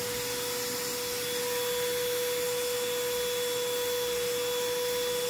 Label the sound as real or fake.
real